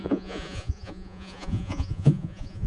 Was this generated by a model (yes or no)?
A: yes